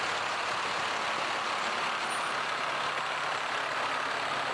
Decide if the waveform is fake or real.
real